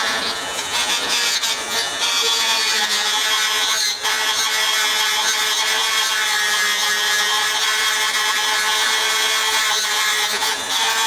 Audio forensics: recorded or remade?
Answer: remade